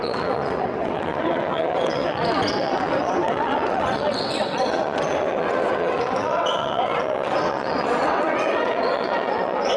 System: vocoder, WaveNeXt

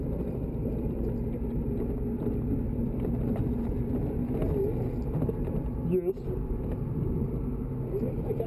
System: none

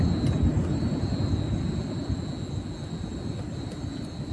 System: none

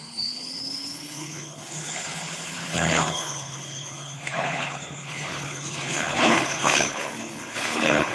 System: codec, HILCodec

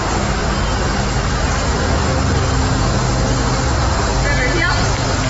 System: none